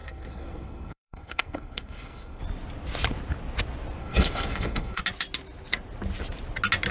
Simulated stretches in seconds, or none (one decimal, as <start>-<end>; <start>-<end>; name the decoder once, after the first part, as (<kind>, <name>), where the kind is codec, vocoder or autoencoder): 0.0-2.4 (codec, SNAC); 4.0-5.0